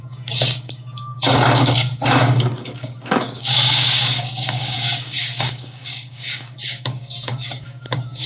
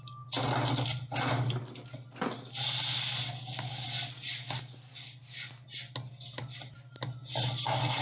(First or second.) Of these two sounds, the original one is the second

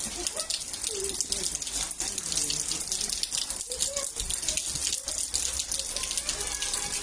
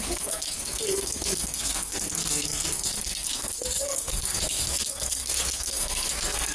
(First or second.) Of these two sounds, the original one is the first